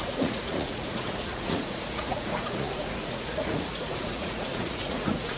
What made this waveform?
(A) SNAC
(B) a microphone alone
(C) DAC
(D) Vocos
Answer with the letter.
D